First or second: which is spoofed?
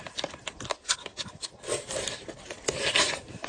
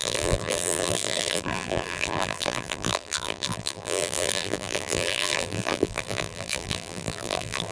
second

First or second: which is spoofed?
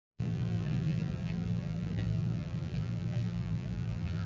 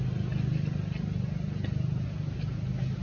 first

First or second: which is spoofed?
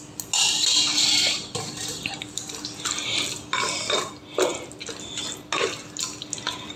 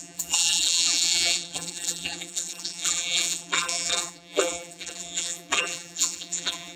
second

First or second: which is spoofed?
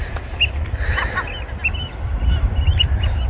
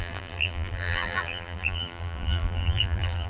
second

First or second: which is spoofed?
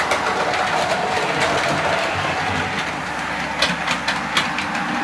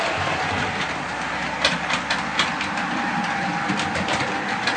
second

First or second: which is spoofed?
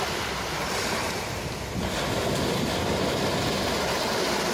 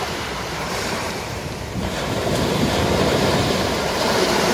second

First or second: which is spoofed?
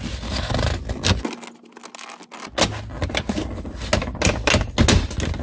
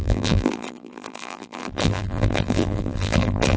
second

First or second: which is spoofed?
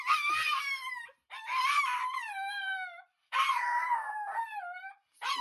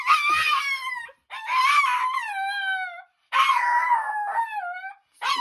first